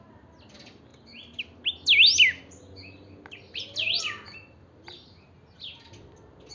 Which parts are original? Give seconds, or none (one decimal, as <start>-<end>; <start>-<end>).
0.0-6.5